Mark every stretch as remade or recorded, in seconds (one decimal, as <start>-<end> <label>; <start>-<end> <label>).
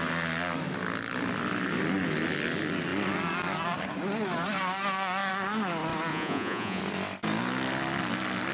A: 0.0-6.1 recorded; 6.1-6.8 remade; 6.8-8.5 recorded